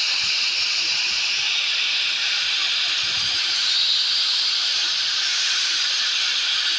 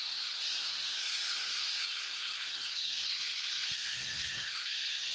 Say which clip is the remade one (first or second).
second